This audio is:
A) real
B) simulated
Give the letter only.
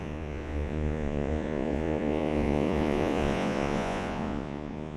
B